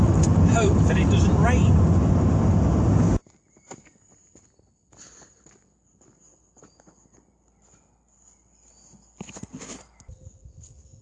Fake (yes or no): no